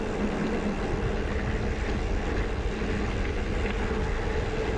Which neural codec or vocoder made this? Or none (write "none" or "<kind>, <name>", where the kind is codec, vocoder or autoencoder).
none